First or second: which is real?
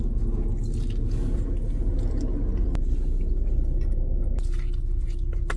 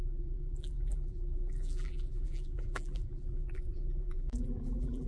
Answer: first